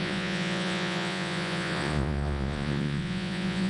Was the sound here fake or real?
fake